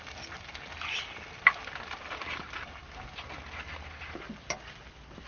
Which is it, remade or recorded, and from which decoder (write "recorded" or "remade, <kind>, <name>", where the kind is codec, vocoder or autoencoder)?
recorded